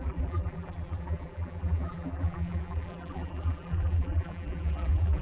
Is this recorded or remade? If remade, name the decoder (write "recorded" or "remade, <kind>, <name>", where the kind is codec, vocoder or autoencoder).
remade, vocoder, BigVGAN v2